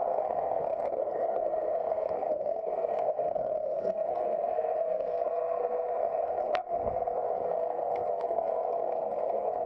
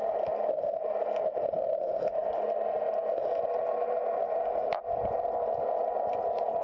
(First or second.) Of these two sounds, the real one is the second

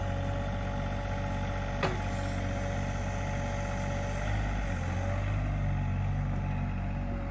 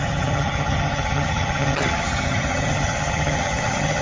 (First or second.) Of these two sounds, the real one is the first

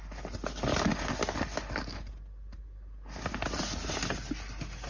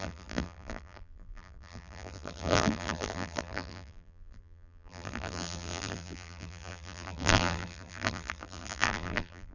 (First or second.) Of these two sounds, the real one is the first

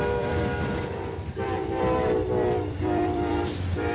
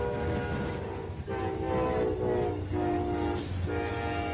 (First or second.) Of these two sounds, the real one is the second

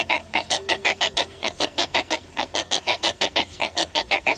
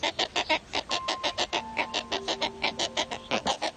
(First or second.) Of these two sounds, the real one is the second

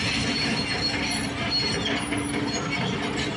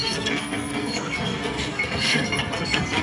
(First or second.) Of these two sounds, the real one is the first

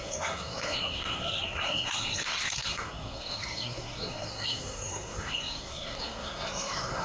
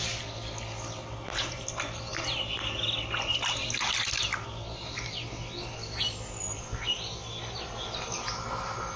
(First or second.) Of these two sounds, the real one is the second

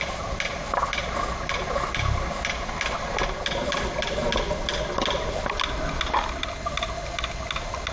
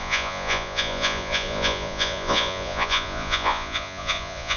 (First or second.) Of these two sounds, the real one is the first